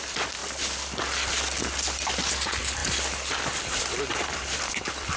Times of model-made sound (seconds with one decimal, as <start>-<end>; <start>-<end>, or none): 0.0-0.4; 2.3-2.8; 4.0-5.2